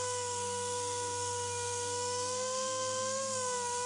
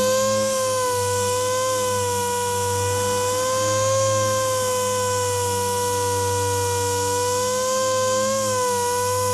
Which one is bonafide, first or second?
second